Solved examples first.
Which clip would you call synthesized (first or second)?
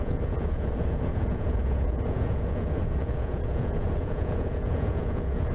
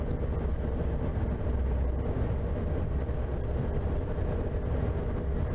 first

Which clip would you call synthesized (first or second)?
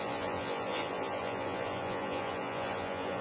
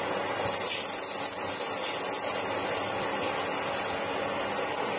first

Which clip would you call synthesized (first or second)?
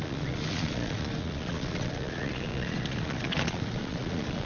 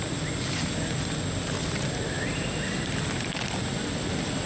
first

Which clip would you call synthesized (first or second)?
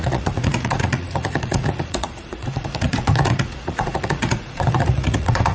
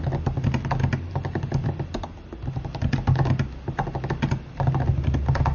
first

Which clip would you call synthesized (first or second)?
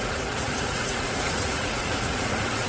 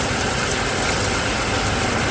first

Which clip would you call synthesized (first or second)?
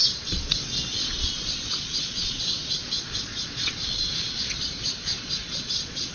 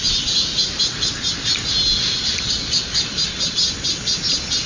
first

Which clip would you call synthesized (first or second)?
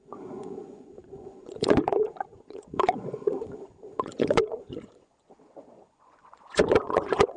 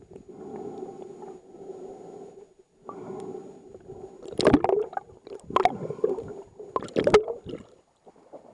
first